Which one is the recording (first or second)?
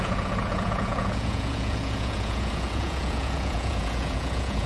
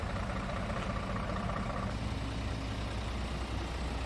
second